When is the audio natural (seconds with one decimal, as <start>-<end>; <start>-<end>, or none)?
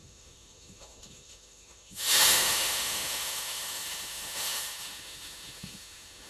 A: none